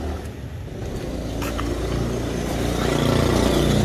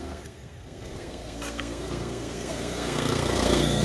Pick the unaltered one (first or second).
first